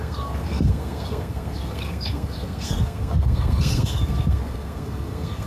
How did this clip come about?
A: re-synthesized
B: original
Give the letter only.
A